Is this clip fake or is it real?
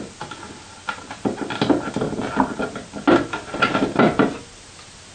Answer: real